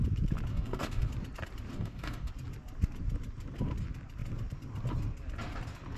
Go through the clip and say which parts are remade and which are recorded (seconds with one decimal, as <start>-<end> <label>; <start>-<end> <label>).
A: 0.0-0.5 recorded; 0.5-1.1 remade; 1.1-1.7 recorded; 1.7-2.3 remade; 2.3-6.0 recorded